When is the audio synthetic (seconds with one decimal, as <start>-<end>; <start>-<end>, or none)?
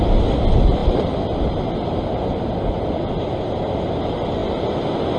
none